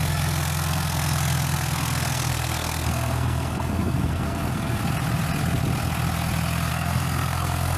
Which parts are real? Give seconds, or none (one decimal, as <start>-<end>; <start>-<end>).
4.8-6.7